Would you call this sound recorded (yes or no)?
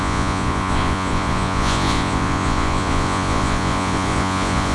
no